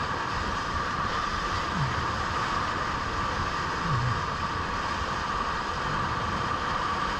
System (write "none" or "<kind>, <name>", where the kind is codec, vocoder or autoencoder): none